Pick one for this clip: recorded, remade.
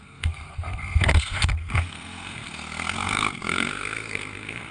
remade